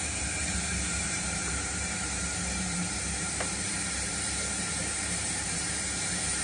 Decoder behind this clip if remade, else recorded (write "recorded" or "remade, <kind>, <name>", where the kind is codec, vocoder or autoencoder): remade, vocoder, BigVGAN v2